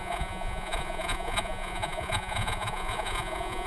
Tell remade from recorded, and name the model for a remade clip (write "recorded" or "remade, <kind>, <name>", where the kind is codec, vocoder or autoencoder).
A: remade, vocoder, Vocos